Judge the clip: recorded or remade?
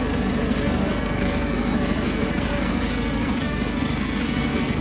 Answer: remade